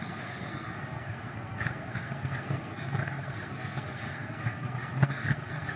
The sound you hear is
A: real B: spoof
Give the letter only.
B